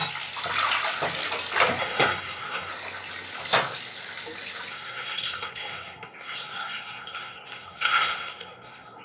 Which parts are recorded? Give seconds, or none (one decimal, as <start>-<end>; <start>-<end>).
0.0-1.8; 2.7-4.7